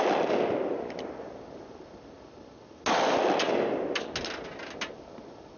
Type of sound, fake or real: real